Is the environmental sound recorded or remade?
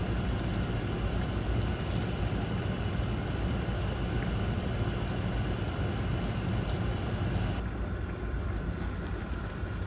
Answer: recorded